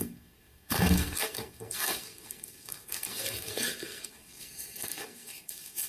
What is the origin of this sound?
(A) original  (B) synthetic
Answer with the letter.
B